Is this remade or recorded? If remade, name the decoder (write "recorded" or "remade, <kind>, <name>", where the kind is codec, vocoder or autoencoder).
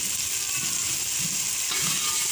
recorded